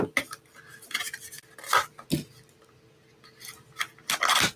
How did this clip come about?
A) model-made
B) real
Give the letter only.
B